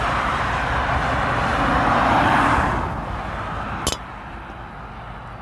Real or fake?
real